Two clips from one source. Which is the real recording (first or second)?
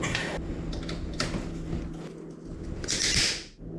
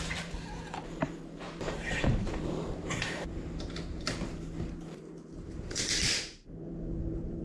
first